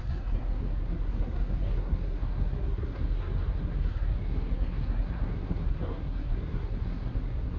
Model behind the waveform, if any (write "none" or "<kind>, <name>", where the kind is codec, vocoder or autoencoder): codec, SNAC